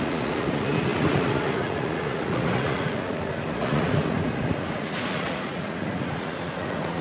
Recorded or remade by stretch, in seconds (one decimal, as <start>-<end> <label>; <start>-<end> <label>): 0.0-7.0 remade